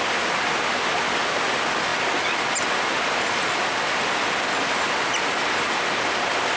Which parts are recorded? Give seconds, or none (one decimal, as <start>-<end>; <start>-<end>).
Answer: 0.0-6.6